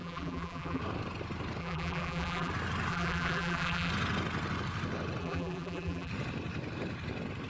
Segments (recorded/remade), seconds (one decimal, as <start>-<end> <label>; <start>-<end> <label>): 0.0-0.8 remade; 0.8-1.6 recorded; 1.6-2.5 remade; 2.5-2.9 recorded; 2.9-3.9 remade; 3.9-5.2 recorded; 5.2-6.1 remade; 6.1-7.5 recorded